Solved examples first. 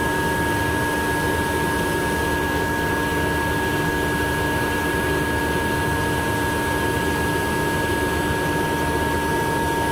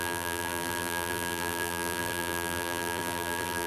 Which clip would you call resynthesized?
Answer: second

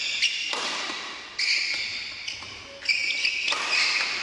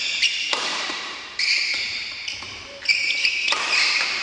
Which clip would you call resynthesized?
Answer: second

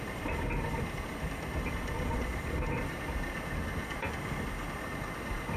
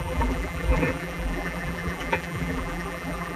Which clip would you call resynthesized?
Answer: second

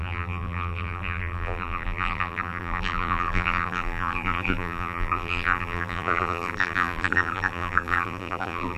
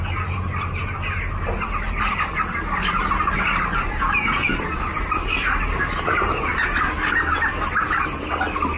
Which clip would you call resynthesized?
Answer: first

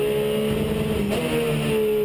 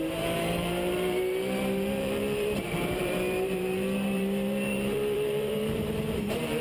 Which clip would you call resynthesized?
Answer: second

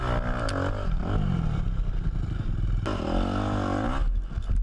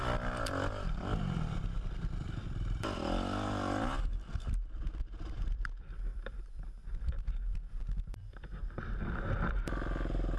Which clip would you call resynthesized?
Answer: second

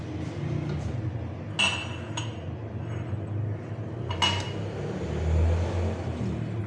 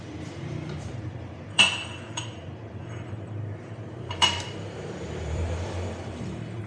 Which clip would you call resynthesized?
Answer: second